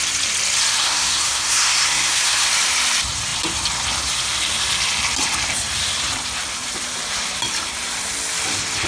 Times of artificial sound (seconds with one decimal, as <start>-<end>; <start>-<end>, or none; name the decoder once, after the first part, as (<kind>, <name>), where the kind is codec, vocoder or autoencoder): 0.8-2.5 (codec, SNAC)